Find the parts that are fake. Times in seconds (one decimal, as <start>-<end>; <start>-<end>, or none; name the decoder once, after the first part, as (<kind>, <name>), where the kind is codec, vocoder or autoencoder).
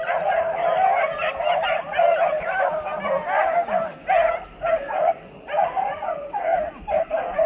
0.0-0.6 (vocoder, Vocos); 4.7-6.5; 7.1-7.5